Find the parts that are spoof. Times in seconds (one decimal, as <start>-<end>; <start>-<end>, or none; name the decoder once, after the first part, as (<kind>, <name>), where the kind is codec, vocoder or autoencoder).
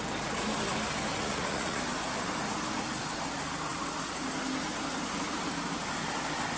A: 1.1-1.8 (vocoder, Vocos)